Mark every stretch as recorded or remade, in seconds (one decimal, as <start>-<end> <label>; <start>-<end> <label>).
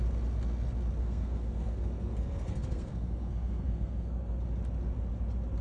0.0-1.0 recorded; 1.0-4.4 remade; 4.4-5.6 recorded